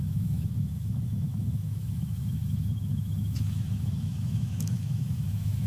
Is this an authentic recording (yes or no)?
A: no